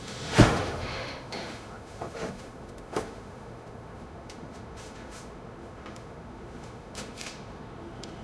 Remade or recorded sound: remade